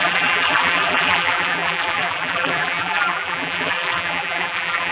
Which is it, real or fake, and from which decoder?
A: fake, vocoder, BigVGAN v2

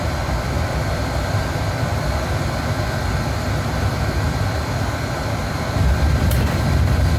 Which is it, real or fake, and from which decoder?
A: fake, vocoder, BigVGAN v2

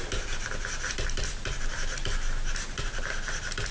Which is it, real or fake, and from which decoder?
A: real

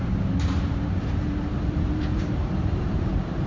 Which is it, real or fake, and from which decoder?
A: fake, vocoder, BigVGAN v2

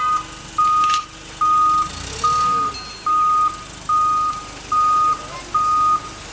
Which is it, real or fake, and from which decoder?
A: real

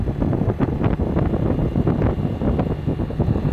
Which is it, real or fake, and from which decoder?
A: real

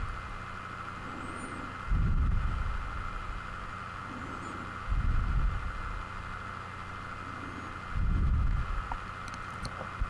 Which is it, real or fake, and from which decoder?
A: real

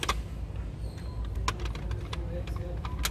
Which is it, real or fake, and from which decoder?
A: real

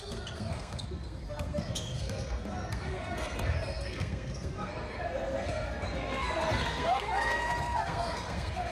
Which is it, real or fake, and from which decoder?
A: fake, codec, SNAC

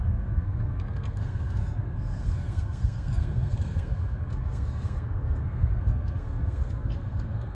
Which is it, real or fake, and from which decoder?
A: fake, codec, SNAC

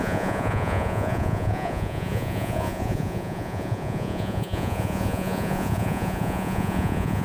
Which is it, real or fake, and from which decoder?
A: fake, vocoder, Vocos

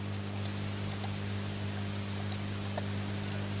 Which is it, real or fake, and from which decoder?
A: real